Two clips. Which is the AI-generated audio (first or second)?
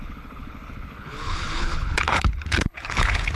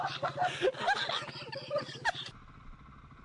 first